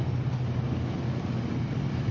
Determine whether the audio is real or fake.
real